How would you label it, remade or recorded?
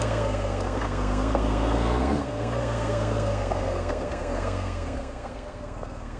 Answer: remade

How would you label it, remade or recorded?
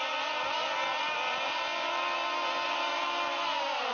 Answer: recorded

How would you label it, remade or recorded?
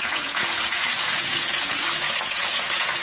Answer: remade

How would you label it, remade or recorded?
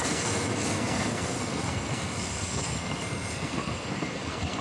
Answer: remade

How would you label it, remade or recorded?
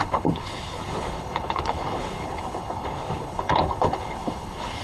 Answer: remade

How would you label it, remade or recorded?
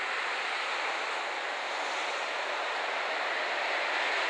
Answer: recorded